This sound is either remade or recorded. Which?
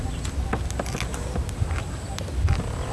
recorded